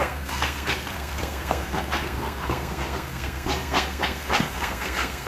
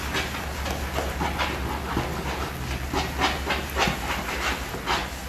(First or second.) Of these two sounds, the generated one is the first